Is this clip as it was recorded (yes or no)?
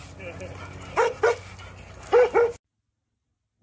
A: yes